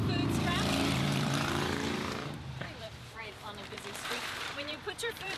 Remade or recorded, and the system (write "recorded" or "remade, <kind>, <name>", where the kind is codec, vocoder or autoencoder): remade, vocoder, BigVGAN v2